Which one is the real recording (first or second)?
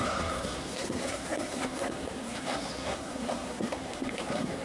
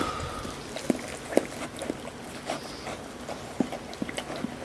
second